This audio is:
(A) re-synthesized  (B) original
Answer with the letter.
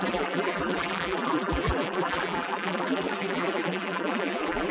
A